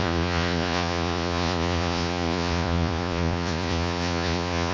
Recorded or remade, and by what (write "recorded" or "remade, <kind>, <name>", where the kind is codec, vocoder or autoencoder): remade, vocoder, Vocos